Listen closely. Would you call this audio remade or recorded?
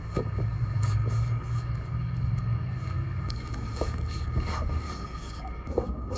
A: remade